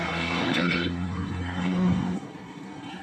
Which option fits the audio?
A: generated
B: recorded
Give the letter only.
A